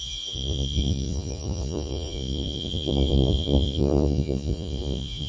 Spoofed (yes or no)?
yes